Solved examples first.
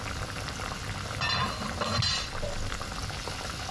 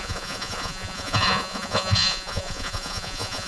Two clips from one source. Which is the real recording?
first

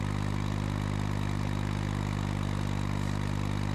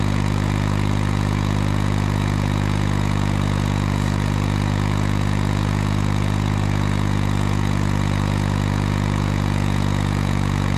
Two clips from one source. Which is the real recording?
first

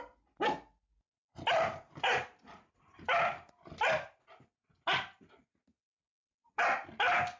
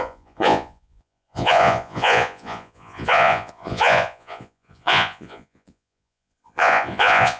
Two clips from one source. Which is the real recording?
first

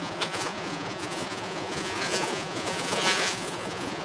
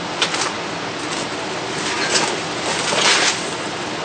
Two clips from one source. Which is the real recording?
second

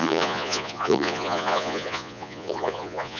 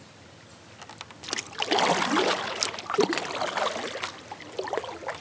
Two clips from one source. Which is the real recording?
second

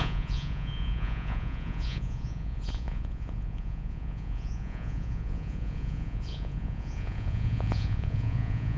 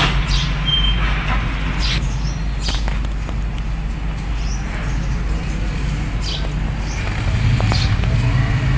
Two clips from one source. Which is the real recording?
second